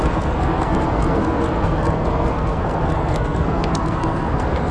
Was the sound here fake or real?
fake